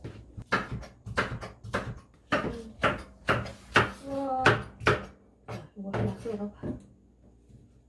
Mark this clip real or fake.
real